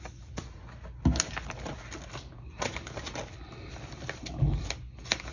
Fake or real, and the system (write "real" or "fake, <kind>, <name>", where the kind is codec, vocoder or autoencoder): real